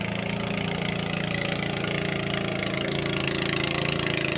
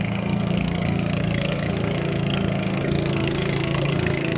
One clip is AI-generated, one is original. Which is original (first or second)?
first